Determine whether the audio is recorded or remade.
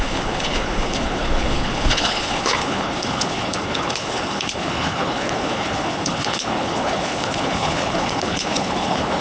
remade